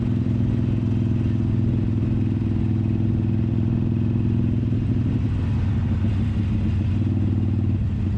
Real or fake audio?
real